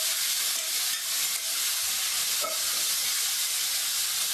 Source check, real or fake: real